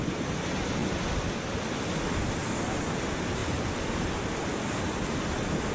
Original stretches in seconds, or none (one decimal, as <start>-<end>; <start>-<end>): 0.0-5.7